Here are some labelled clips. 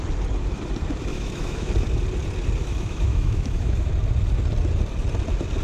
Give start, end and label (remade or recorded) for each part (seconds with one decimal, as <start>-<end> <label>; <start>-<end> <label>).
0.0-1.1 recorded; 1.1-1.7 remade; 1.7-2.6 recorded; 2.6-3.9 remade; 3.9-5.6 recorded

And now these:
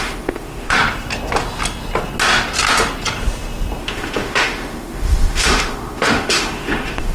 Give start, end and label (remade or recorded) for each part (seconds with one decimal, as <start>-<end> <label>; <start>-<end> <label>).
0.0-0.8 remade; 0.8-3.8 recorded; 3.8-7.1 remade

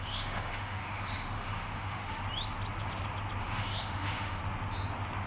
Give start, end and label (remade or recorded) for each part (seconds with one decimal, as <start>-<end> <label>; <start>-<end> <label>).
0.0-2.2 remade; 2.2-3.4 recorded; 3.4-4.4 remade; 4.4-5.3 recorded

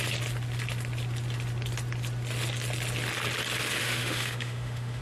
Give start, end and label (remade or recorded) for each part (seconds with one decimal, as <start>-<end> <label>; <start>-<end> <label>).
0.0-3.8 recorded; 3.8-5.0 remade

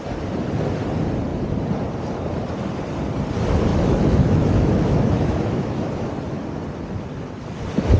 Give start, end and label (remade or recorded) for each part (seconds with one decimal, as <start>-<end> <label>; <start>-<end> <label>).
0.0-3.7 recorded; 3.7-6.1 remade; 6.1-8.0 recorded